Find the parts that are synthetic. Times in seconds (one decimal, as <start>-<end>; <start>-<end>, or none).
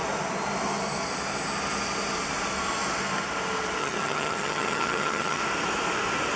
3.8-5.4